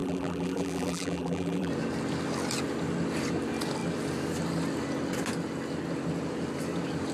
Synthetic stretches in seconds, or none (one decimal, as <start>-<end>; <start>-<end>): 0.0-1.7